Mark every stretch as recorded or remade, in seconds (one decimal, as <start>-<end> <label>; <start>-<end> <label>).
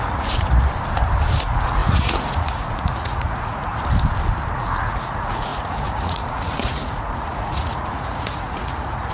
0.0-0.7 remade; 0.7-1.3 recorded; 1.3-3.7 remade; 3.7-4.5 recorded; 4.5-9.1 remade